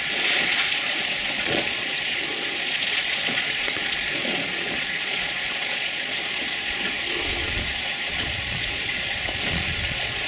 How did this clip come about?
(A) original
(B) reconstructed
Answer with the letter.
B